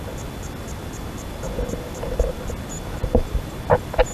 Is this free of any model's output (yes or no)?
yes